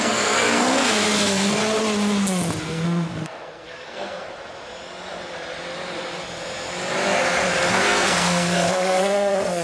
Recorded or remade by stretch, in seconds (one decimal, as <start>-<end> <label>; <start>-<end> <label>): 0.0-1.6 remade; 1.6-2.6 recorded; 2.6-4.3 remade; 4.3-7.7 recorded; 7.7-9.6 remade